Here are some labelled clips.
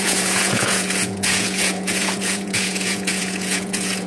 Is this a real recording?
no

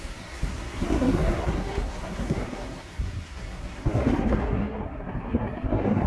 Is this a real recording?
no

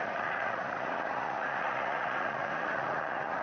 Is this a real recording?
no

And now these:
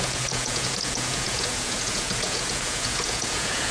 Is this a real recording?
no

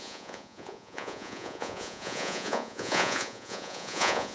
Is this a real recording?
no